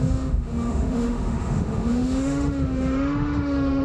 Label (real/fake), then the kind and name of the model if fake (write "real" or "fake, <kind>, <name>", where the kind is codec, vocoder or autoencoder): fake, autoencoder, DAC-VAE